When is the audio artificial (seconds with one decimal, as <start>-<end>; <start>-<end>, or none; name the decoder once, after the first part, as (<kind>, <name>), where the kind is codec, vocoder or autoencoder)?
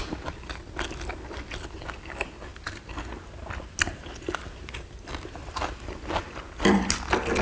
none